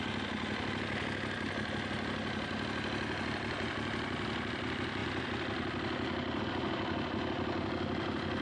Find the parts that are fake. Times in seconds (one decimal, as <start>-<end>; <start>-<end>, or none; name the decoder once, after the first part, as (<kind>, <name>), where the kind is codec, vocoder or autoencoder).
none